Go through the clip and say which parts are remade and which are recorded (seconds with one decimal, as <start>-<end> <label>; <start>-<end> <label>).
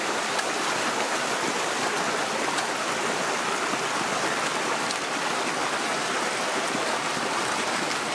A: 0.0-8.1 recorded